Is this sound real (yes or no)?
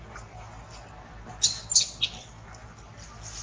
yes